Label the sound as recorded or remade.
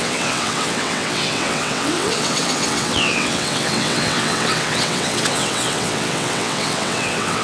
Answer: remade